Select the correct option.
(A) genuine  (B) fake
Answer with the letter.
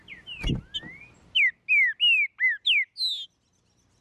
A